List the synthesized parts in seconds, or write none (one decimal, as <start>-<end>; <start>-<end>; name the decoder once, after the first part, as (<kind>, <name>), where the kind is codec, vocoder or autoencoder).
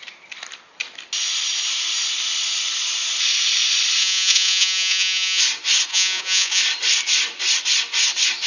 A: 4.0-5.4 (vocoder, Vocos); 5.9-6.6